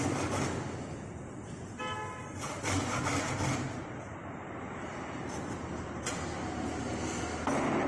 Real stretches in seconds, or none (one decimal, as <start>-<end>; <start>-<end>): 0.0-4.2; 4.8-7.9